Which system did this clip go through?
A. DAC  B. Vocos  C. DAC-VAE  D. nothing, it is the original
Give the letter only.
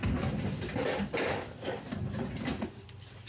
D